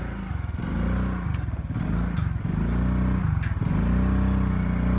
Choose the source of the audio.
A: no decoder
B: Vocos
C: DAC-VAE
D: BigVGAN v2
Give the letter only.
A